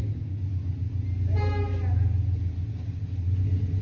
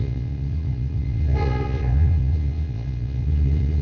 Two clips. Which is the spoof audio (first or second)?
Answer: second